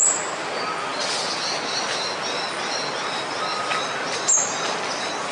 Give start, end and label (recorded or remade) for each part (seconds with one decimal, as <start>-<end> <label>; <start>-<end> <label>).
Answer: 0.0-5.3 recorded